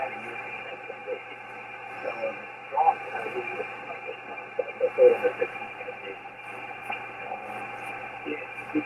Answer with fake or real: real